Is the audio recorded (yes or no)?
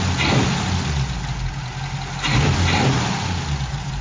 yes